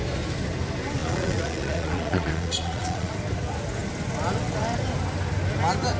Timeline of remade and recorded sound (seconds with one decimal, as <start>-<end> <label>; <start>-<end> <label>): 0.0-1.0 recorded; 1.0-3.1 remade; 3.1-6.0 recorded

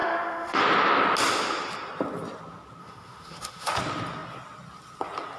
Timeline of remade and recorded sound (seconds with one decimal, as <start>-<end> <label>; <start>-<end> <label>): 0.0-0.6 remade; 0.6-2.8 recorded; 2.8-3.7 remade; 3.7-5.4 recorded